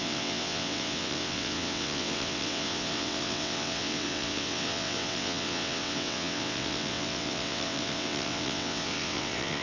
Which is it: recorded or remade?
remade